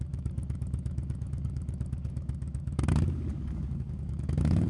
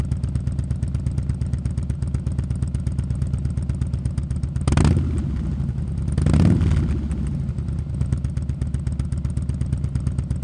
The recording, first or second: second